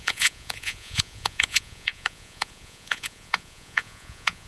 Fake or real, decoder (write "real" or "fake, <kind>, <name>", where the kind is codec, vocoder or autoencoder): fake, vocoder, Vocos